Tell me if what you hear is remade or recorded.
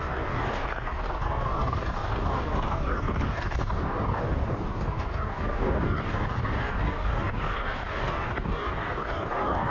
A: remade